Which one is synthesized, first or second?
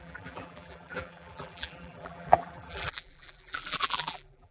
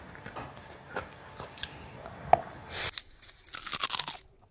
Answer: first